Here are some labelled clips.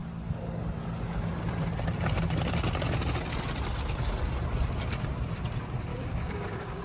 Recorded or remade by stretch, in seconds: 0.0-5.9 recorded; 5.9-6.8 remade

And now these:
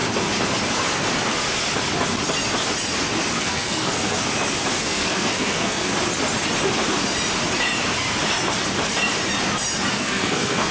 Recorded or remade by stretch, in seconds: 0.0-3.4 recorded; 3.4-4.2 remade; 4.2-4.8 recorded; 4.8-5.9 remade; 5.9-9.9 recorded; 9.9-10.7 remade

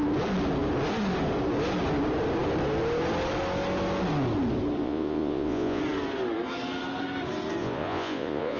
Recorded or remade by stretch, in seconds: 0.0-4.8 recorded; 4.8-5.8 remade; 5.8-7.6 recorded; 7.6-8.6 remade

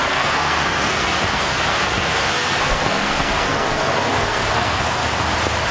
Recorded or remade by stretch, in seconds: 0.0-5.0 remade; 5.0-5.7 recorded

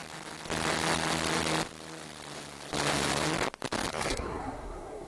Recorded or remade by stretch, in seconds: 0.0-3.9 recorded; 3.9-5.1 remade

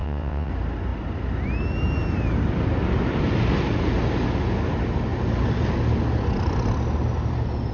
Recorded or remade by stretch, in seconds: 0.0-0.5 remade; 0.5-7.7 recorded